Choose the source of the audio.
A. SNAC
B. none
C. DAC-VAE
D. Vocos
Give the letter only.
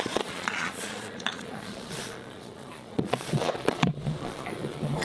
D